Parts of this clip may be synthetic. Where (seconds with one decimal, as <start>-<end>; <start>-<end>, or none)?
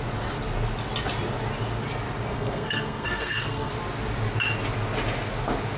2.3-3.7